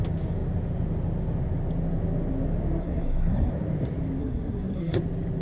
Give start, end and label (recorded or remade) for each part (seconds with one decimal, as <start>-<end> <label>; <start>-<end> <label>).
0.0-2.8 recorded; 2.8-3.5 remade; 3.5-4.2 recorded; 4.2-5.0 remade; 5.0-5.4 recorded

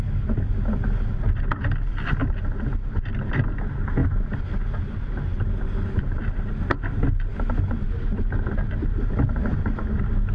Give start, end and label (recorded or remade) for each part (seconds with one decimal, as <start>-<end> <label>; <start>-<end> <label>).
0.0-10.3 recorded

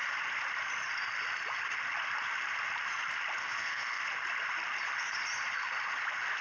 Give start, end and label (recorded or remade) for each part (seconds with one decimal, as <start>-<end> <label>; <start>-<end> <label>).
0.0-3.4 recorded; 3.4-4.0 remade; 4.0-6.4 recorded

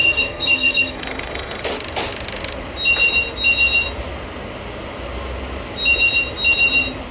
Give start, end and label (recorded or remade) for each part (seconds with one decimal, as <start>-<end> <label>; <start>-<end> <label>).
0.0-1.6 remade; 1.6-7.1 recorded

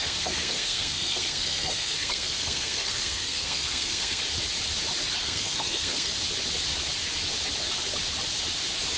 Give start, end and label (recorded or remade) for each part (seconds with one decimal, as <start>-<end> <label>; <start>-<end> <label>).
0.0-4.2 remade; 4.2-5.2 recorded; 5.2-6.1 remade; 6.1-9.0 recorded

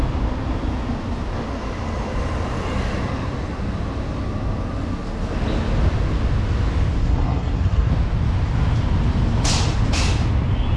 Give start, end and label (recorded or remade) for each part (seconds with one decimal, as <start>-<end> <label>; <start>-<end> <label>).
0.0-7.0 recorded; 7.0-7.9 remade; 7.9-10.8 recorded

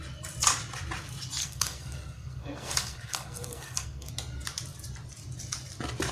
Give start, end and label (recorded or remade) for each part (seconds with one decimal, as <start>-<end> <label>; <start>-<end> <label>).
0.0-1.4 recorded; 1.4-4.1 remade; 4.1-6.1 recorded